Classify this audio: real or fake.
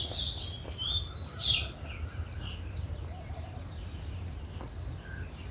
real